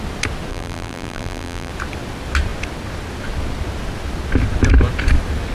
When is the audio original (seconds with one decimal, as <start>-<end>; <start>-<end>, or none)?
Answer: 0.0-0.5; 1.7-5.5

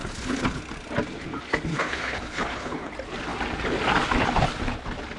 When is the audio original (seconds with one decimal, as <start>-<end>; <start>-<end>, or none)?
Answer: 0.6-1.7; 2.9-5.2